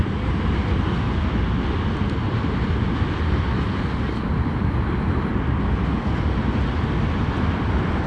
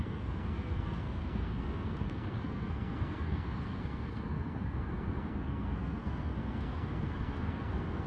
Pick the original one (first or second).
first